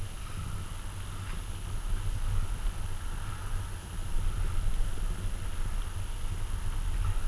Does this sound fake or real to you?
real